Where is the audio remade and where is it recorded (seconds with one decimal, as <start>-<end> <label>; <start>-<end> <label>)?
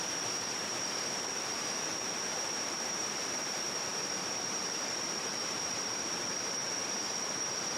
0.0-7.8 remade